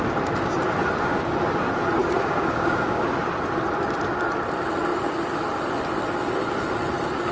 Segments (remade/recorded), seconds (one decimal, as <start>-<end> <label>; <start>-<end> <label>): 0.0-2.0 recorded; 2.0-3.1 remade; 3.1-7.3 recorded